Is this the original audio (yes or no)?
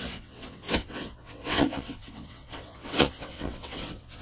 no